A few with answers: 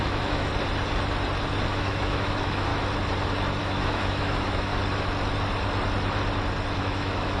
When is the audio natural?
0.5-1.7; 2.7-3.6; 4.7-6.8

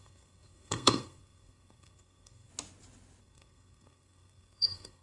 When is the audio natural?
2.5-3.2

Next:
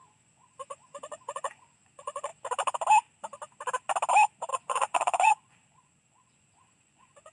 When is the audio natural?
2.3-4.5